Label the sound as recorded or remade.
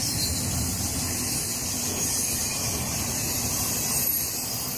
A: recorded